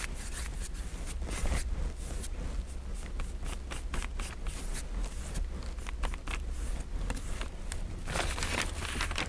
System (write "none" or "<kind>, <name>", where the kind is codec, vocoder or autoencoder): none